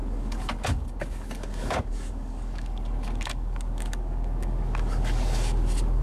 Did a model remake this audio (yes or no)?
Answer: yes